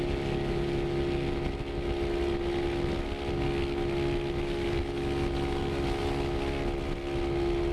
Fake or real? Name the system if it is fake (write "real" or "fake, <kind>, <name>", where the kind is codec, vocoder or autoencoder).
real